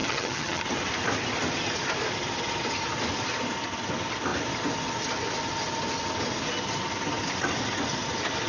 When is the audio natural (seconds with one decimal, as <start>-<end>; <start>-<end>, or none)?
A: 0.6-8.5